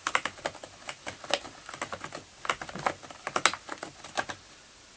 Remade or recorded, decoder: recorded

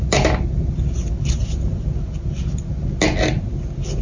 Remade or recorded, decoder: recorded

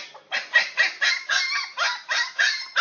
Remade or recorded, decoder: recorded